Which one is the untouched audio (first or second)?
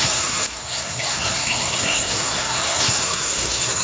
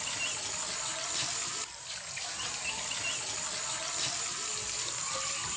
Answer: second